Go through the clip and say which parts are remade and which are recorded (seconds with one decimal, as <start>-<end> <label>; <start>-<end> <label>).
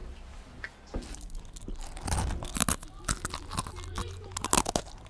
0.0-5.1 recorded